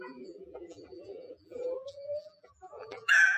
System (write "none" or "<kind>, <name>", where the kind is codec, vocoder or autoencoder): vocoder, BigVGAN v2